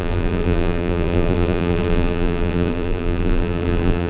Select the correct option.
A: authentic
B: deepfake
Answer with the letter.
B